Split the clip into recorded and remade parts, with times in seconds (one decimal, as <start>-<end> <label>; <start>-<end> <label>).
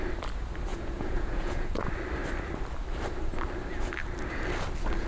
0.0-0.7 recorded; 0.7-1.8 remade; 1.8-5.1 recorded